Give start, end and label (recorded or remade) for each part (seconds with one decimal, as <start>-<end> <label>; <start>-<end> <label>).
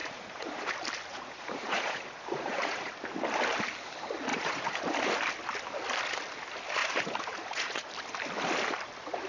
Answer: 0.0-0.7 remade; 0.7-1.1 recorded; 1.1-2.9 remade; 2.9-4.3 recorded; 4.3-4.8 remade; 4.8-6.8 recorded; 6.8-7.9 remade; 7.9-9.3 recorded